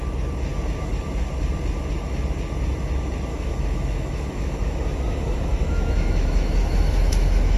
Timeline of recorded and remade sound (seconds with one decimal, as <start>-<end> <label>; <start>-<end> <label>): 0.0-3.3 recorded; 3.3-7.6 remade